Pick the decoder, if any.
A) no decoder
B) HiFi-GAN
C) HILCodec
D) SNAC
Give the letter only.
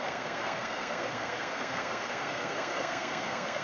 D